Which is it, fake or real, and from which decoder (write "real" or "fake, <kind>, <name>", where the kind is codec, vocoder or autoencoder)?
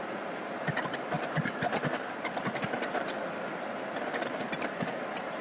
fake, vocoder, BigVGAN v2